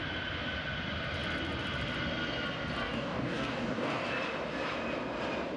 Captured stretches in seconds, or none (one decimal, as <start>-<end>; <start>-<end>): 0.0-2.8; 4.1-5.6